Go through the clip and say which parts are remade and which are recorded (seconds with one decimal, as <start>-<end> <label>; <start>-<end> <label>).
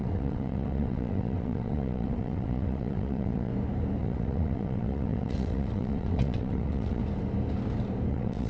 0.0-3.5 remade; 3.5-4.0 recorded; 4.0-7.0 remade; 7.0-8.1 recorded; 8.1-8.5 remade